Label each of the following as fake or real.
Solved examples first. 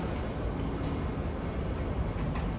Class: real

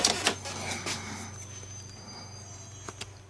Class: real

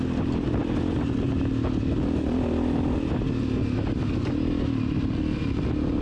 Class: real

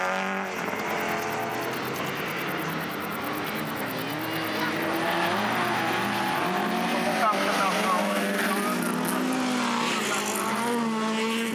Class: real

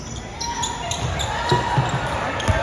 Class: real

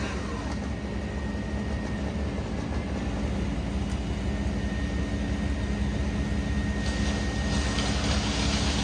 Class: real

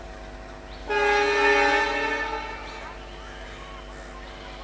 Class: real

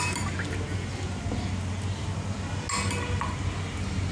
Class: real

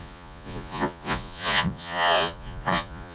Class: fake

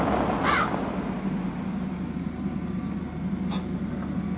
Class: real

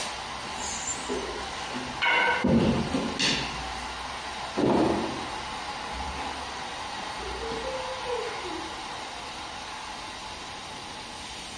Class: real